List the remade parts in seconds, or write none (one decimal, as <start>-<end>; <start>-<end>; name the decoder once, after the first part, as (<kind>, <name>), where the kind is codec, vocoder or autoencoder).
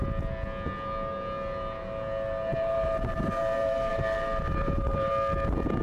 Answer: 2.5-5.1 (vocoder, BigVGAN v2)